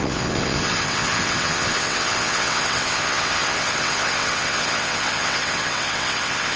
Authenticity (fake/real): fake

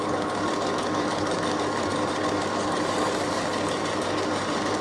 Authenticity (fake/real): fake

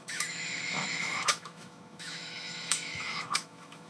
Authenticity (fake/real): fake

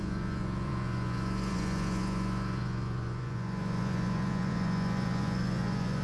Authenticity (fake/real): fake